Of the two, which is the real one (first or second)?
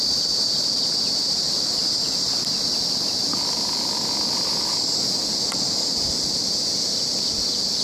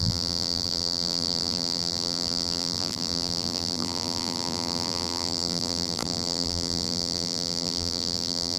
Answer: first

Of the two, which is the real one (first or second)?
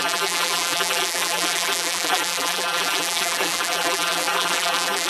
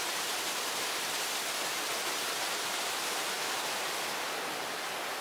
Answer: second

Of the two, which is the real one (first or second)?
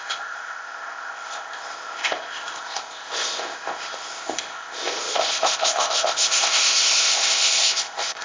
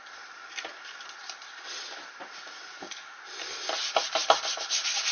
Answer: second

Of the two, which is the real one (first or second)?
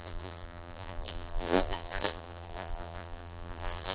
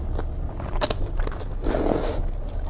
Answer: second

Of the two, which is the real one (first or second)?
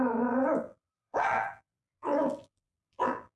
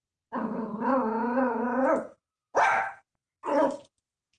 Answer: second